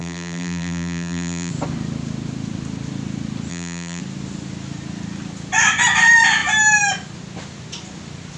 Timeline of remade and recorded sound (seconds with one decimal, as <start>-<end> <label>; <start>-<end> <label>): 0.0-1.5 remade; 1.5-3.5 recorded; 3.5-4.0 remade; 4.0-8.4 recorded